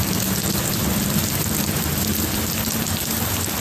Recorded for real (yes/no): no